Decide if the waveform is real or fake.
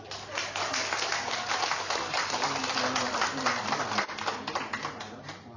real